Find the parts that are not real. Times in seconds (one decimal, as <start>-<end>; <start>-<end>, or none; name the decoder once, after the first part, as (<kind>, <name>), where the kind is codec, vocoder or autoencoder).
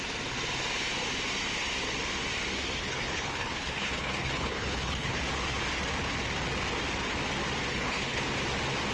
2.8-5.2 (codec, HILCodec); 7.7-8.2